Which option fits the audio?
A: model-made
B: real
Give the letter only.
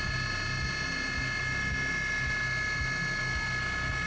B